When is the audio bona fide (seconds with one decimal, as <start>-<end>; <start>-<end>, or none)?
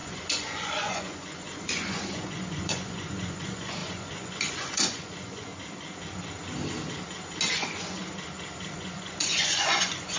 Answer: 5.5-7.5; 8.0-8.7